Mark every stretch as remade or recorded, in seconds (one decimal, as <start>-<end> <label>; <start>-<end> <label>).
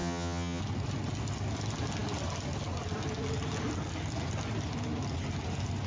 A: 0.0-0.6 remade; 0.6-5.9 recorded